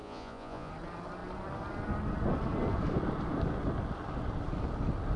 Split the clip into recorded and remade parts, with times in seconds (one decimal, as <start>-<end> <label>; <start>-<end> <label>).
0.0-0.7 remade; 0.7-5.2 recorded